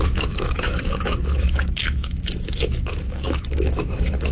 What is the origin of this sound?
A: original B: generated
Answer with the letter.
B